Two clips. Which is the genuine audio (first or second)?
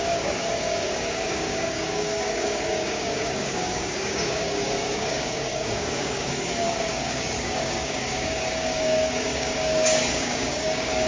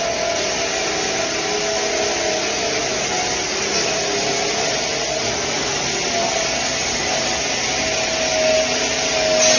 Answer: second